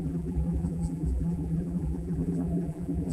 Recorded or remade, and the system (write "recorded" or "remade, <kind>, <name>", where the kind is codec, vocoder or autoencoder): remade, vocoder, BigVGAN v2